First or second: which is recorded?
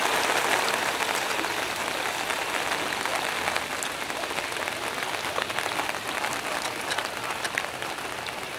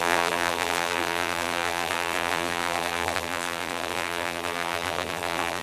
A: first